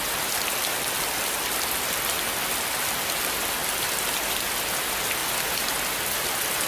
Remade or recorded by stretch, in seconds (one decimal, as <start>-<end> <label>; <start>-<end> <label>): 0.0-6.7 recorded